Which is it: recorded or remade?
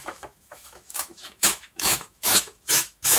remade